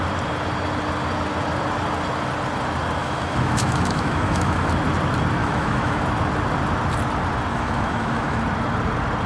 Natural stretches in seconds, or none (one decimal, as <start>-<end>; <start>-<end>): 0.0-3.0; 4.7-5.4; 6.0-7.5; 8.4-9.3